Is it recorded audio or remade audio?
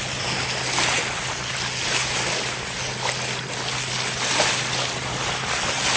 recorded